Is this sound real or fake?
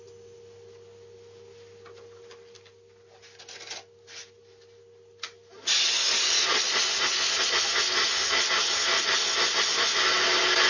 real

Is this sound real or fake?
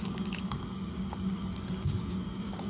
fake